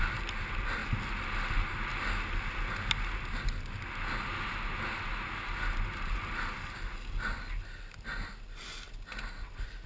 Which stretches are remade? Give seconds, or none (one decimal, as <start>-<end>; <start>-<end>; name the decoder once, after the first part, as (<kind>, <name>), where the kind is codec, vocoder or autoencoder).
none